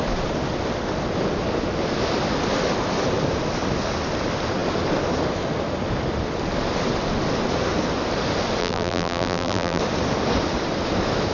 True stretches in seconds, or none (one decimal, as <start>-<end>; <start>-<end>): 0.0-8.6; 9.8-11.3